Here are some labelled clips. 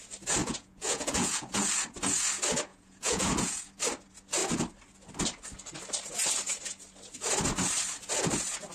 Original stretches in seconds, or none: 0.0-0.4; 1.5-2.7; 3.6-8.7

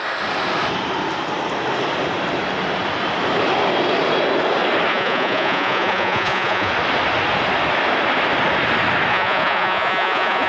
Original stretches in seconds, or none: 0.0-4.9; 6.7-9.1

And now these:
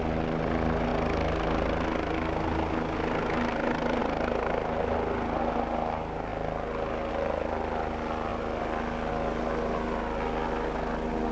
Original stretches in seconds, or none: 0.0-11.3

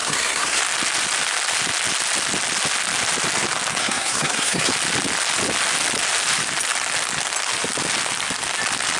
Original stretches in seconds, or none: 0.6-3.8; 4.7-9.0

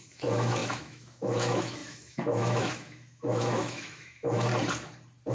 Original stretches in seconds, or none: 4.5-5.3